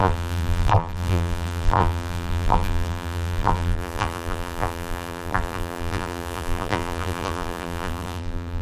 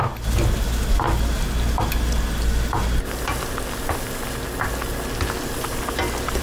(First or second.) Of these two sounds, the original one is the second